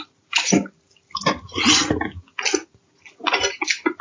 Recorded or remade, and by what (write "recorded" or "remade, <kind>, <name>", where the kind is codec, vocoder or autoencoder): recorded